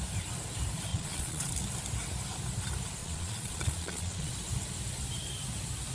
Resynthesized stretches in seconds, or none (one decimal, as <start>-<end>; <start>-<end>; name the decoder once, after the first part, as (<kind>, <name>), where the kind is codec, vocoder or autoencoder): 0.9-1.5 (vocoder, Vocos); 3.0-4.3